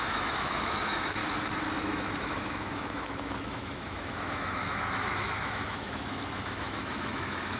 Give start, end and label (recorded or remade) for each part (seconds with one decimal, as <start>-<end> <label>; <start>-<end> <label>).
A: 0.0-1.2 remade; 1.2-1.8 recorded; 1.8-7.6 remade